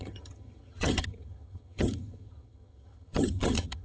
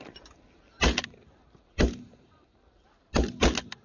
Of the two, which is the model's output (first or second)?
first